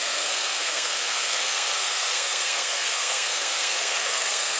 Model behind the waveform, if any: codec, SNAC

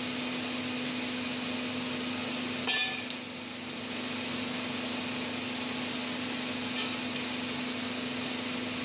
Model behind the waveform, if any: none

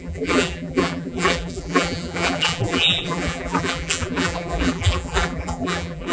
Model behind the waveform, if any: vocoder, BigVGAN v2